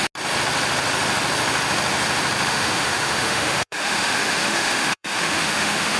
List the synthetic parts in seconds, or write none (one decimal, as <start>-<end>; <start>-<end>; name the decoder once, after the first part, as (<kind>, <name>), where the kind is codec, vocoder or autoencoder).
2.5-6.0 (autoencoder, DAC-VAE)